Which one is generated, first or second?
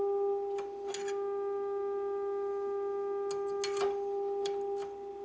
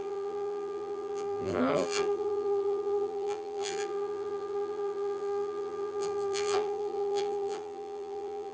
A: second